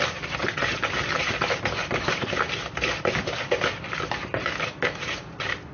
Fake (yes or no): no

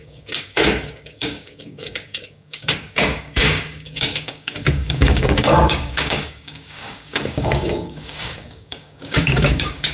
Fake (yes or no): yes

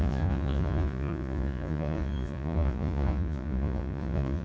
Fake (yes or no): yes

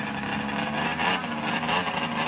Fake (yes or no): no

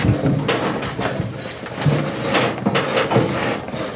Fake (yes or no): no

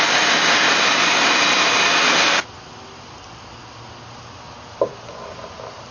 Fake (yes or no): no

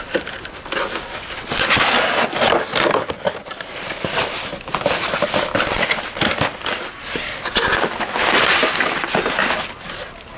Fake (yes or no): no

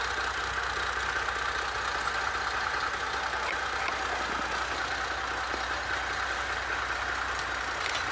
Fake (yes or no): no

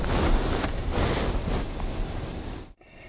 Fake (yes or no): no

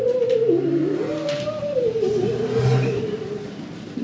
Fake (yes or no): no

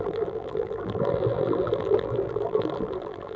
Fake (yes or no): yes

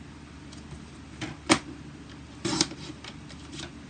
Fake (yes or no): no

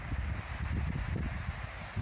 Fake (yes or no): no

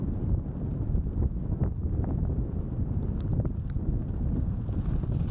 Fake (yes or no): no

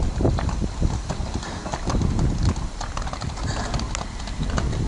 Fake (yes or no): no